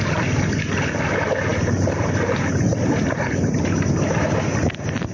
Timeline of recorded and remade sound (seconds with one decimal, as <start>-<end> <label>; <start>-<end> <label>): 0.0-5.1 recorded